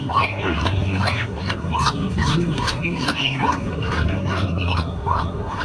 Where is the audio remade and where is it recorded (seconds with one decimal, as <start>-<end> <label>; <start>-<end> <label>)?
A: 0.0-5.6 remade